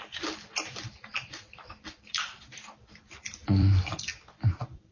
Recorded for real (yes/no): no